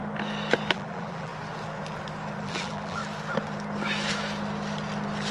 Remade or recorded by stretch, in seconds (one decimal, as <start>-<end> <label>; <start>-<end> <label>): 0.0-0.7 recorded; 0.7-1.3 remade; 1.3-2.4 recorded; 2.4-3.0 remade; 3.0-5.3 recorded